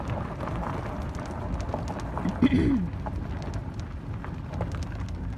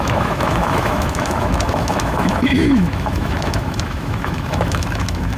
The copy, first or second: second